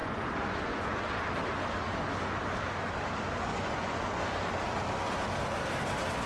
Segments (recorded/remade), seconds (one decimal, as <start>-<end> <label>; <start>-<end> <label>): 0.0-1.1 remade; 1.1-3.5 recorded; 3.5-4.2 remade; 4.2-6.3 recorded